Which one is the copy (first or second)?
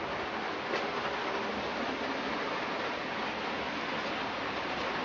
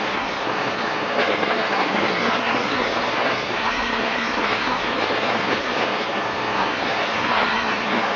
second